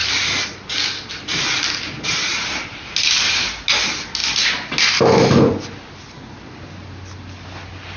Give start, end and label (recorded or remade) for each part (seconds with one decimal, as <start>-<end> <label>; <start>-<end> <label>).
0.0-8.0 recorded